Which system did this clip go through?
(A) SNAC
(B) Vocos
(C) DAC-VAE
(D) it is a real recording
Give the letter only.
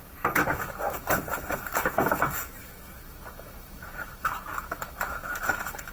C